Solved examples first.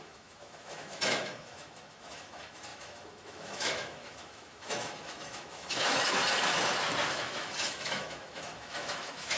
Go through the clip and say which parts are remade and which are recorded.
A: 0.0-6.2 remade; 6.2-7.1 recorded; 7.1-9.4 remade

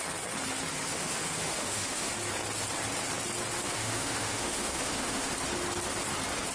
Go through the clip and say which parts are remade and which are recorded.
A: 0.0-0.9 recorded; 0.9-2.1 remade; 2.1-3.7 recorded; 3.7-5.3 remade; 5.3-6.5 recorded

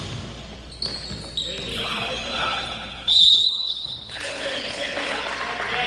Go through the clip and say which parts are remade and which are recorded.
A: 0.0-1.7 recorded; 1.7-5.2 remade; 5.2-5.9 recorded

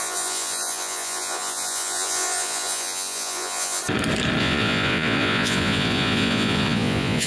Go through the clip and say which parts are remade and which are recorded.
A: 0.0-3.8 remade; 3.8-4.4 recorded; 4.4-7.3 remade

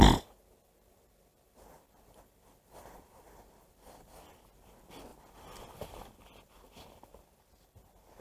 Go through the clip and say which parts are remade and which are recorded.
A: 0.0-8.2 recorded

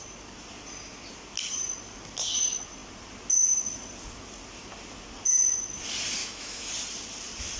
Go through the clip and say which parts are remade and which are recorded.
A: 0.0-6.2 recorded; 6.2-6.7 remade; 6.7-7.6 recorded